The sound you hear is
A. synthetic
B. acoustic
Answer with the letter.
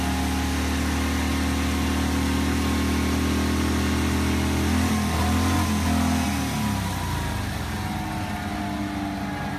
B